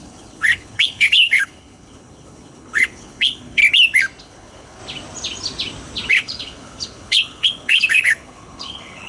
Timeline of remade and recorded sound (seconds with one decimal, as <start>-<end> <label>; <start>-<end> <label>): 0.0-3.6 remade; 3.6-4.2 recorded; 4.2-4.8 remade; 4.8-6.1 recorded; 6.1-9.1 remade